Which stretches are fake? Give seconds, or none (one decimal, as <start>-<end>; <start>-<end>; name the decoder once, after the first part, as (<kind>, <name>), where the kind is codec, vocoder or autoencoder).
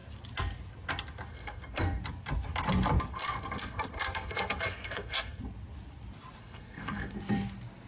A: 1.3-2.0 (codec, SNAC); 3.1-5.4; 6.4-7.2